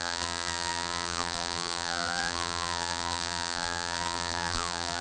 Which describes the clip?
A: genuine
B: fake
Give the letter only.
B